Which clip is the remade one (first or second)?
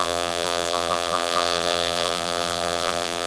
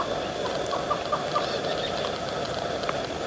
first